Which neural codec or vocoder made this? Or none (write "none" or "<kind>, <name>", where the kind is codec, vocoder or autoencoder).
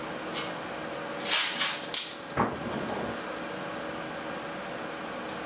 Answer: none